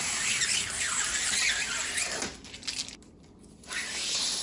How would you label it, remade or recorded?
recorded